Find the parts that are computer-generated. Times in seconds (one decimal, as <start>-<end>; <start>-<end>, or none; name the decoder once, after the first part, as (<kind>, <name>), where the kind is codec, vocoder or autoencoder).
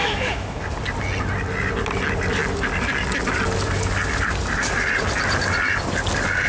0.0-0.6 (autoencoder, DAC-VAE)